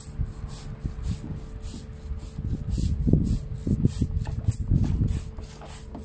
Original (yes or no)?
yes